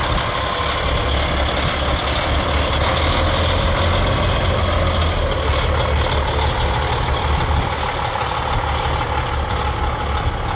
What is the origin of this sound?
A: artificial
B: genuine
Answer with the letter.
B